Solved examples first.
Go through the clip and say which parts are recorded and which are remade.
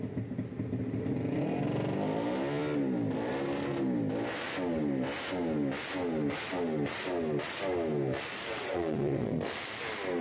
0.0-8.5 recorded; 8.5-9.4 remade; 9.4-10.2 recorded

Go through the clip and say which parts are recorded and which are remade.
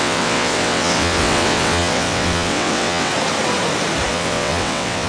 0.0-3.1 remade; 3.1-4.1 recorded; 4.1-5.1 remade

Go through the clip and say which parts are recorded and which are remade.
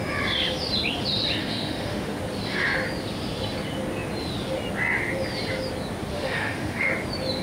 0.0-1.4 recorded; 1.4-2.2 remade; 2.2-6.1 recorded; 6.1-6.9 remade; 6.9-7.4 recorded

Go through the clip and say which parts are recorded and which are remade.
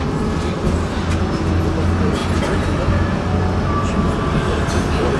0.0-5.2 recorded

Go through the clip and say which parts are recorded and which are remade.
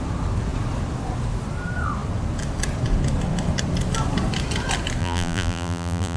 0.0-5.0 recorded; 5.0-6.2 remade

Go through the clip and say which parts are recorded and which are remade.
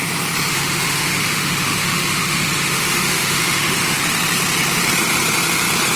0.0-0.5 recorded; 0.5-4.0 remade; 4.0-6.0 recorded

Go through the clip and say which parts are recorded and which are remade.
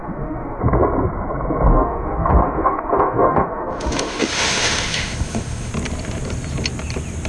0.0-0.6 remade; 0.6-1.7 recorded; 1.7-5.7 remade; 5.7-7.3 recorded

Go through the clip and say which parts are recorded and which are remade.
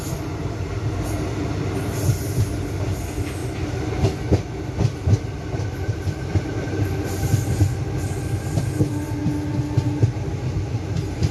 0.0-11.3 recorded